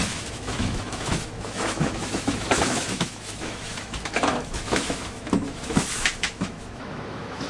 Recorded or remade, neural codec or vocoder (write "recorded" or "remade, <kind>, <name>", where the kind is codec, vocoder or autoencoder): remade, autoencoder, DAC-VAE